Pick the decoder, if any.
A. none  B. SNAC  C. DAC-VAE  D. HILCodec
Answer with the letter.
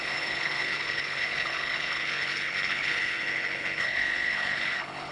D